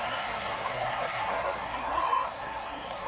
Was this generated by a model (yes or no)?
yes